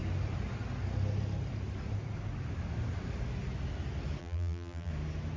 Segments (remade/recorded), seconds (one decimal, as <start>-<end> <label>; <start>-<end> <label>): 0.0-4.2 recorded; 4.2-4.9 remade; 4.9-5.4 recorded